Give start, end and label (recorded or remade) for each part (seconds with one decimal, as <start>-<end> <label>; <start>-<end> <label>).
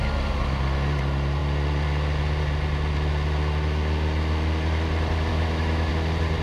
0.0-5.3 recorded; 5.3-5.9 remade; 5.9-6.4 recorded